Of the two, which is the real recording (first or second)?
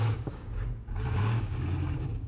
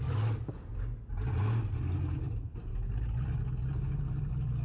second